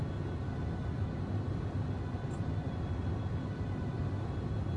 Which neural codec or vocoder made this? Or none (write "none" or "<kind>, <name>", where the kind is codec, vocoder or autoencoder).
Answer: none